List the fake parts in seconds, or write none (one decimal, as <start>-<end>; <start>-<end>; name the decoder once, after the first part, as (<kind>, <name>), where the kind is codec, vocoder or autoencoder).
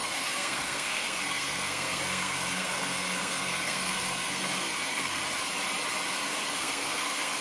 0.0-5.2 (codec, SNAC); 6.5-7.4